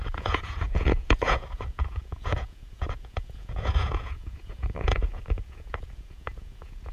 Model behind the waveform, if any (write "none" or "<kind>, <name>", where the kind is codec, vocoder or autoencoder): vocoder, Vocos